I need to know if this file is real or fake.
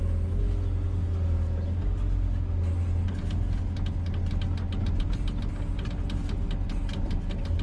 real